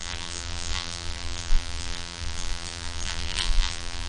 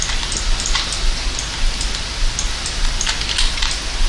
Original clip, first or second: second